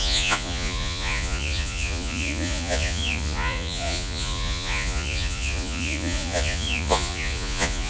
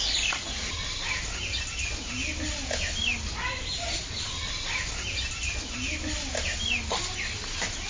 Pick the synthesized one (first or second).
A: first